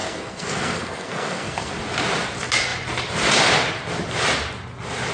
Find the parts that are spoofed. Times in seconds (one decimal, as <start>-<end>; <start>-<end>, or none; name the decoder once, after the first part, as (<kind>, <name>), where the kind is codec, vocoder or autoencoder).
0.0-1.7 (codec, SNAC)